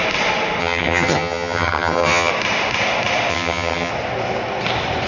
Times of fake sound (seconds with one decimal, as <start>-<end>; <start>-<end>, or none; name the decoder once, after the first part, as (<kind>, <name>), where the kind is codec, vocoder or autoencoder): 0.6-2.3 (vocoder, HiFi-GAN); 3.3-3.9